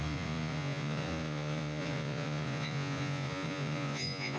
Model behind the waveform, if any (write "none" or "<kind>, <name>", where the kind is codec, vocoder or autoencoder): vocoder, Vocos